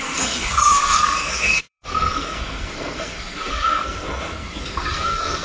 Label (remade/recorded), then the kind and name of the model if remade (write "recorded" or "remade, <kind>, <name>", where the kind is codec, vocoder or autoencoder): remade, codec, SNAC